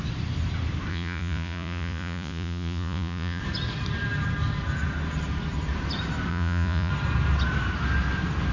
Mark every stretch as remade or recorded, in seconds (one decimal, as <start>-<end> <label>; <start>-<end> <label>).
0.0-0.9 recorded; 0.9-3.4 remade; 3.4-6.3 recorded; 6.3-6.9 remade; 6.9-8.5 recorded